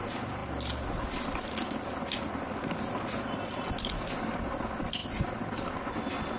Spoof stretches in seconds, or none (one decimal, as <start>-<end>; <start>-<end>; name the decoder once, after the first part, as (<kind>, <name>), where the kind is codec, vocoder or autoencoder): none